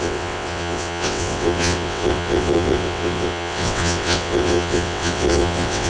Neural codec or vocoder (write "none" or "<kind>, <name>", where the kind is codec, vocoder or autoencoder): vocoder, WaveNeXt